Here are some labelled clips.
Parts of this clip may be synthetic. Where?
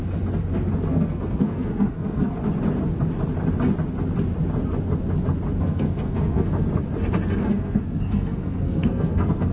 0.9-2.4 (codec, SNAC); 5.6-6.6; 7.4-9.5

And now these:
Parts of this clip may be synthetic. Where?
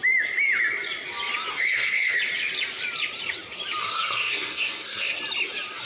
1.5-2.2 (codec, SNAC); 3.8-5.2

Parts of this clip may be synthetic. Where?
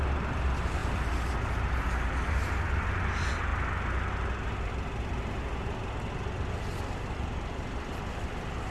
none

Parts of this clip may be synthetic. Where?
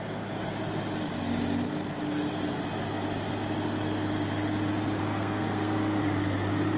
5.0-6.0 (codec, SNAC)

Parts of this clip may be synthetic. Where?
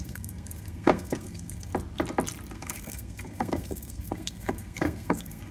0.0-1.7 (codec, SNAC); 2.5-5.5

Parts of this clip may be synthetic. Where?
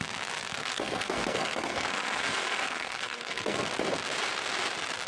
0.6-3.7 (codec, SNAC)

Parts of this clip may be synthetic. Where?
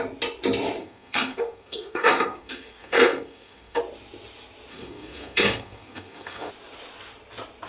0.8-3.8 (codec, SNAC); 4.7-6.5